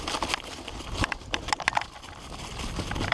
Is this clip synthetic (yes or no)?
no